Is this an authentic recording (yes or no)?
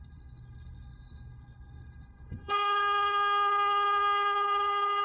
no